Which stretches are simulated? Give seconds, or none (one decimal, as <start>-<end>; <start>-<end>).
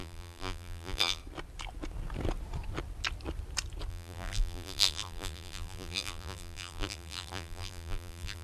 0.0-1.2; 3.9-8.4